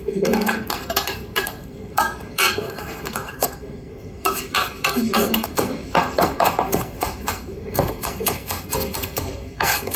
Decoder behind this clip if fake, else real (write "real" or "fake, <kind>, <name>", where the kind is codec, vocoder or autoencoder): fake, codec, SNAC